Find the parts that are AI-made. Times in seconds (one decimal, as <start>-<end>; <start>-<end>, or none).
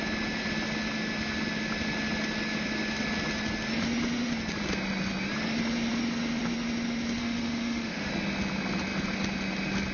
7.2-8.1